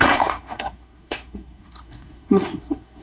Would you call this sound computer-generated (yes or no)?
yes